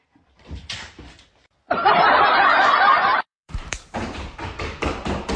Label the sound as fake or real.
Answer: fake